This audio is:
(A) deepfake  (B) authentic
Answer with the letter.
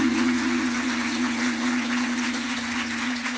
A